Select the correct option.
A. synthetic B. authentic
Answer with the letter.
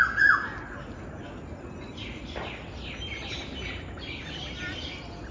B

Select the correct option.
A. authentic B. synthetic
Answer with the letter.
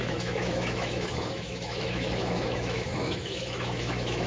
B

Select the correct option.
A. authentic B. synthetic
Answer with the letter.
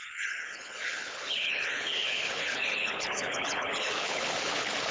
B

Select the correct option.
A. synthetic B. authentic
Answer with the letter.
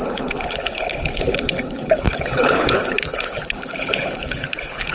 A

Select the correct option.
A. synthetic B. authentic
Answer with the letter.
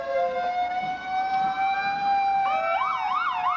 B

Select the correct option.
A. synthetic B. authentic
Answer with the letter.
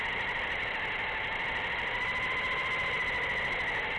B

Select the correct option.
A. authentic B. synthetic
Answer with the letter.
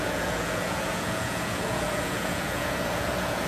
B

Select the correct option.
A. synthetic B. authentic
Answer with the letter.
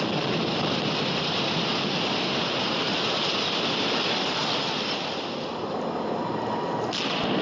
B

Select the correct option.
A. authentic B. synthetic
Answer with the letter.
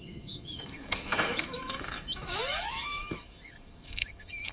B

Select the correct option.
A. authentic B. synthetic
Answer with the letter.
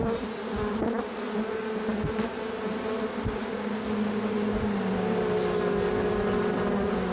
A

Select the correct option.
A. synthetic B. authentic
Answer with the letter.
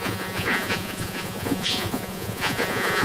A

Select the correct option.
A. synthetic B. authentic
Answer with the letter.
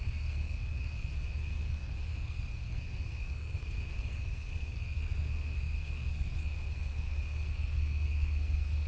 A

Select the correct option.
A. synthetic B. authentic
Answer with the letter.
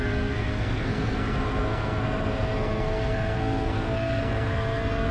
A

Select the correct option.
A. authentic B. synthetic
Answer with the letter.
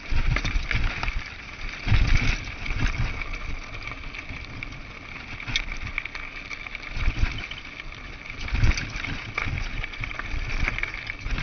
A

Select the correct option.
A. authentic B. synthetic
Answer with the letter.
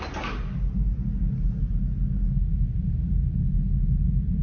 A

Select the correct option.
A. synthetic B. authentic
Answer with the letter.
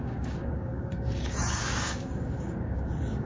A